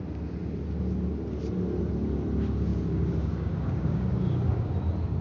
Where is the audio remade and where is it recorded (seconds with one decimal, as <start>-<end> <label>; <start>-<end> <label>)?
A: 0.0-2.7 recorded; 2.7-4.7 remade; 4.7-5.2 recorded